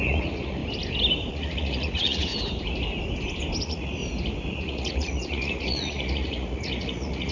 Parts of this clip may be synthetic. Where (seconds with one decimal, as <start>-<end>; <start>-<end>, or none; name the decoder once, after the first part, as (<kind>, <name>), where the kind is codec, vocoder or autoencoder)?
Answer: 0.0-0.6 (vocoder, Vocos); 1.3-2.3; 3.6-4.0; 4.5-7.3